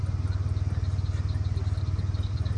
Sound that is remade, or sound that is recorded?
recorded